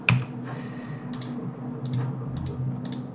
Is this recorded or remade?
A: recorded